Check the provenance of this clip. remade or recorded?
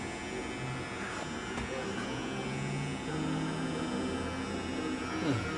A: recorded